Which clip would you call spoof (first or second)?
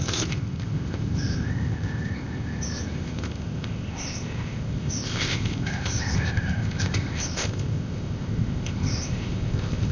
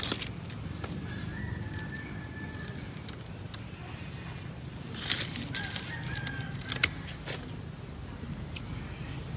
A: first